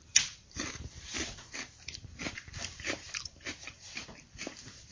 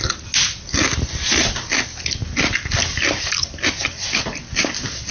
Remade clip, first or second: first